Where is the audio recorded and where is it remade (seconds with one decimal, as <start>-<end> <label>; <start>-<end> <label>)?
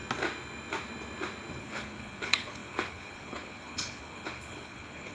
0.0-1.6 recorded; 1.6-5.1 remade